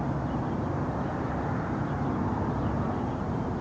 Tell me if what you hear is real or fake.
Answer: real